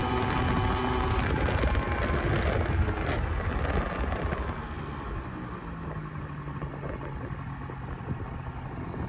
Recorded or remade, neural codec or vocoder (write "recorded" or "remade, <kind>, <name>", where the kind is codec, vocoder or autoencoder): recorded